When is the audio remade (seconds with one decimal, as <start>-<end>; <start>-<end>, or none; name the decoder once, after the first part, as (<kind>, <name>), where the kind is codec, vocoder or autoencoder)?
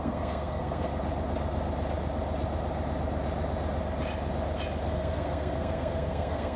0.0-0.9 (codec, SNAC); 4.9-6.6